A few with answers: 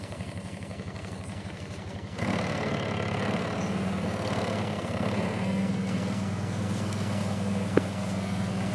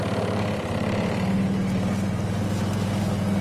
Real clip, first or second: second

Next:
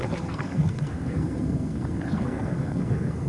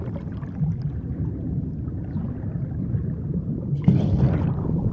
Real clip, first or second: second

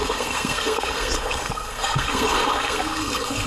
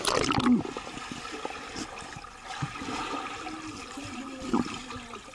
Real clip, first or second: second